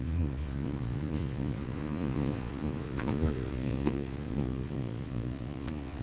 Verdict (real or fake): fake